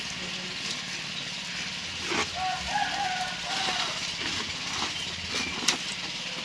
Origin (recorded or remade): recorded